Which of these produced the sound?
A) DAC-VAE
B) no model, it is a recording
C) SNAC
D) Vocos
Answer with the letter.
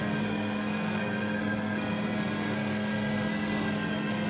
C